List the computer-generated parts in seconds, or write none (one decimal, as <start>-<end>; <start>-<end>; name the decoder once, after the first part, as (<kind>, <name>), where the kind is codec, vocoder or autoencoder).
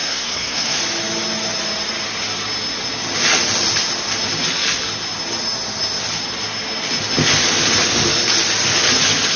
0.0-0.8 (codec, SNAC)